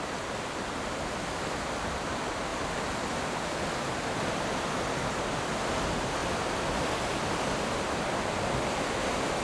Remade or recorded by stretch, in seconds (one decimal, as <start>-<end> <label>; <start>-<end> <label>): 0.0-6.2 recorded; 6.2-6.9 remade; 6.9-9.4 recorded